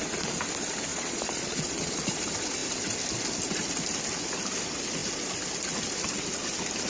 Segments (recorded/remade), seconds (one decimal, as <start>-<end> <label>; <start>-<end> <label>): 0.0-0.9 recorded; 0.9-2.2 remade; 2.2-6.9 recorded